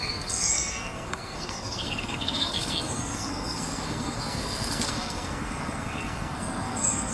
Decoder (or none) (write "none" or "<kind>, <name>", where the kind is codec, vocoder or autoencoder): codec, SNAC